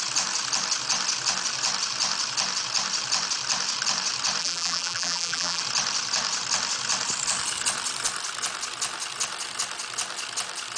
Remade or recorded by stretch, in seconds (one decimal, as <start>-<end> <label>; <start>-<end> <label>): 0.0-4.4 recorded; 4.4-5.6 remade; 5.6-10.8 recorded